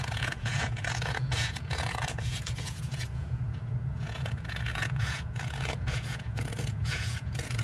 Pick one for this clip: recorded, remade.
remade